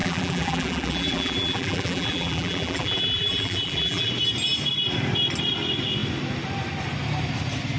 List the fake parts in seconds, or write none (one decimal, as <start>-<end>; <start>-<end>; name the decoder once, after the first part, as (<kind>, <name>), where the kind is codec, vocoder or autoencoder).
0.0-4.1 (vocoder, BigVGAN v2)